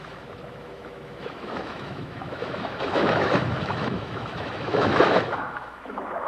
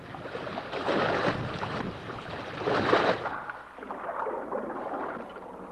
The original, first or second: second